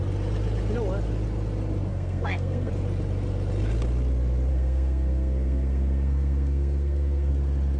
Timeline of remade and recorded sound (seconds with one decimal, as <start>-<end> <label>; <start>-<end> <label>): 0.0-1.9 recorded; 1.9-2.7 remade; 2.7-4.5 recorded; 4.5-7.3 remade; 7.3-7.8 recorded